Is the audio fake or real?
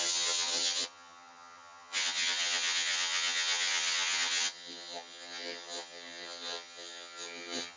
fake